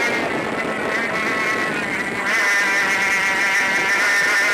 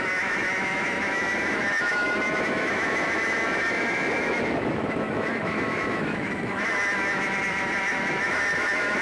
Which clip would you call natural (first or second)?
first